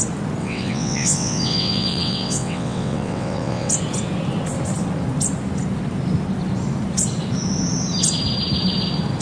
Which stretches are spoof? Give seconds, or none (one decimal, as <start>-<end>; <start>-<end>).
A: 0.4-3.7